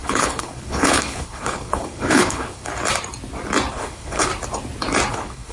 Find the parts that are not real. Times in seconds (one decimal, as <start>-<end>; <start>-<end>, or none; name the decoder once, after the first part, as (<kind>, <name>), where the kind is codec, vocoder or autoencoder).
0.0-2.7 (codec, HILCodec); 3.7-4.3; 5.1-5.5